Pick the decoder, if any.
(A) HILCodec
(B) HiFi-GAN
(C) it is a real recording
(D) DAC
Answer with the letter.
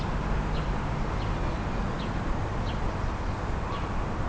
C